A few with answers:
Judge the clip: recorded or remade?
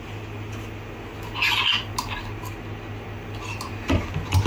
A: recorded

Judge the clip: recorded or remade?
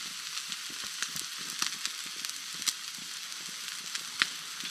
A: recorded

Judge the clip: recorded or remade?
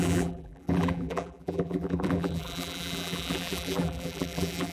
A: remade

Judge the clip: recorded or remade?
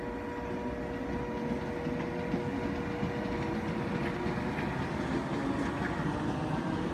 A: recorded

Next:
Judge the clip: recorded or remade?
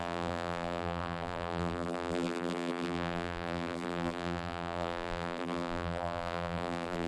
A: remade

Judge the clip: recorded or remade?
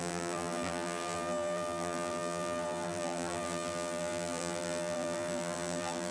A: remade